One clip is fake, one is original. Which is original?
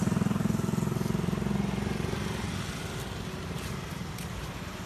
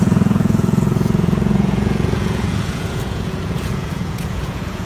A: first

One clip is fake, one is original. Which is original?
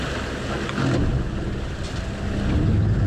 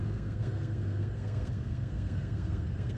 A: first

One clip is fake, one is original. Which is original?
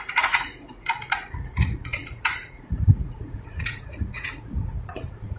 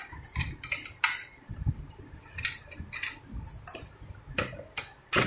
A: second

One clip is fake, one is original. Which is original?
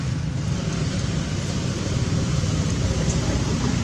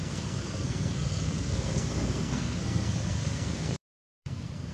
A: first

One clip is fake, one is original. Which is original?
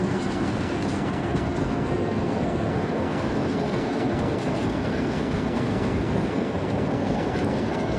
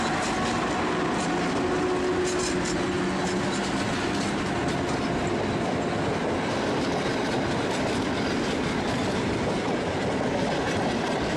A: second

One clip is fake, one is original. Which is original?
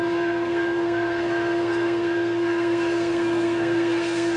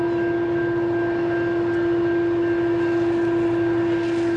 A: second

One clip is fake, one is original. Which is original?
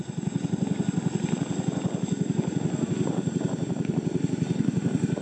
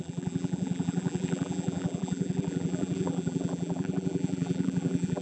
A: first